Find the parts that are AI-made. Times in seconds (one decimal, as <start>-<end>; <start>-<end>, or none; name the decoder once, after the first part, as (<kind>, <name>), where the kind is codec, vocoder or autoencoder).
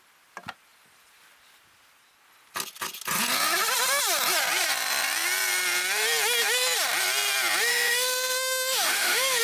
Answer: 7.7-9.4 (autoencoder, DAC-VAE)